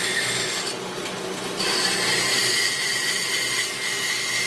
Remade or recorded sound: recorded